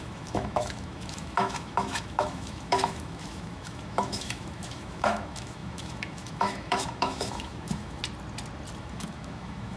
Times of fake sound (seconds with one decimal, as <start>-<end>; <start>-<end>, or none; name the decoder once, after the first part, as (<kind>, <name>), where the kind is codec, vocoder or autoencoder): 0.0-8.0 (autoencoder, DAC-VAE); 8.8-9.8